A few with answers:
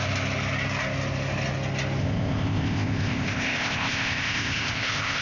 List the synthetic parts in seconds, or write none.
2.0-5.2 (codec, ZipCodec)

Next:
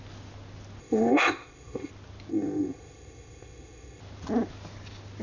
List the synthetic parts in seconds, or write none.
0.8-1.9 (codec, ZipCodec); 2.3-4.0

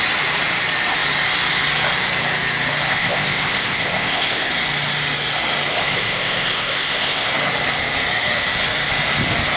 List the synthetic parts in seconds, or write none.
2.9-4.5 (codec, ZipCodec); 5.7-7.3